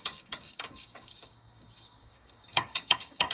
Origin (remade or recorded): remade